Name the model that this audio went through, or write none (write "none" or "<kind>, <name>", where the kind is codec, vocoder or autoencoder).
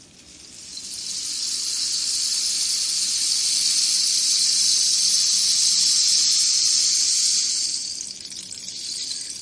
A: none